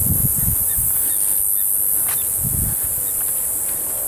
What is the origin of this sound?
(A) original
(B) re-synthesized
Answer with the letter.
A